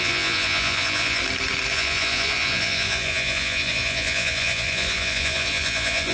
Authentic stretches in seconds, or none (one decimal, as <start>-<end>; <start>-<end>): 1.2-1.7